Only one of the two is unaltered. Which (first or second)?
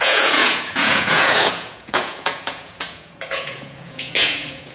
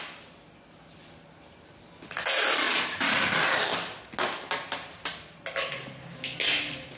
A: second